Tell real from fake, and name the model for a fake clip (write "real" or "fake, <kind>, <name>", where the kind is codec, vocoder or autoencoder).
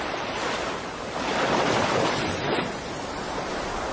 real